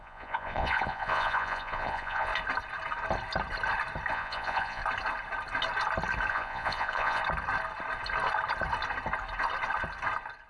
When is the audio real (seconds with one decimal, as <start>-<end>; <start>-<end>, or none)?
2.3-4.1; 4.8-6.3; 7.2-10.5